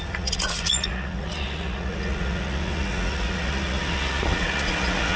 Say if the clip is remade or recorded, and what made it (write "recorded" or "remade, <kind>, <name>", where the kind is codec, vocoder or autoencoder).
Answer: remade, vocoder, Vocos